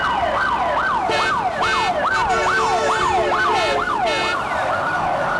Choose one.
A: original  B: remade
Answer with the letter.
A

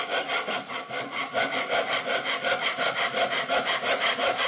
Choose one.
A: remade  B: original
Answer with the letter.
B